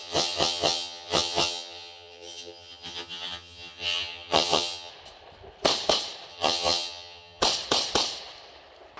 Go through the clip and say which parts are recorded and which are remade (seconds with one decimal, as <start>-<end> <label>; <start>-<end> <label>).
0.0-4.9 remade; 4.9-6.3 recorded; 6.3-7.4 remade; 7.4-9.0 recorded